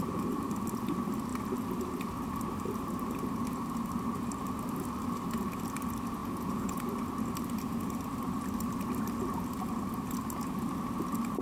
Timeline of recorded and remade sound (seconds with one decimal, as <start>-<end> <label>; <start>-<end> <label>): 0.0-6.2 recorded; 6.2-6.8 remade; 6.8-11.4 recorded